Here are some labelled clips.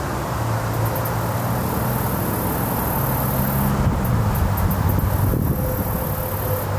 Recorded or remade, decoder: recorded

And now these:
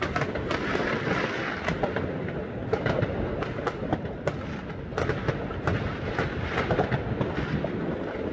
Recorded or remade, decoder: recorded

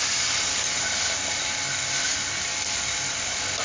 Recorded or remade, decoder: recorded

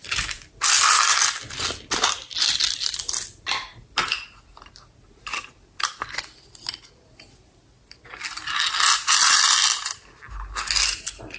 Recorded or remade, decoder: recorded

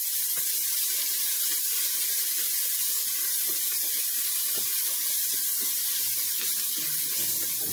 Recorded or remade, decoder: remade, vocoder, BigVGAN v2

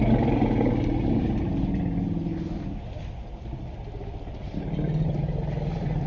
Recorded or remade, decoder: recorded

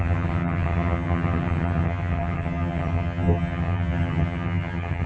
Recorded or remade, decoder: remade, vocoder, HiFi-GAN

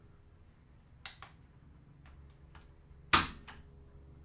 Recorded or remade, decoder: recorded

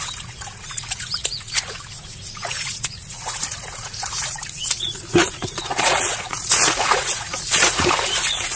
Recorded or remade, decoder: remade, vocoder, Vocos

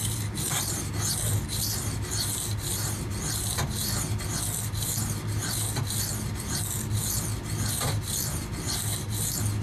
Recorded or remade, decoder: recorded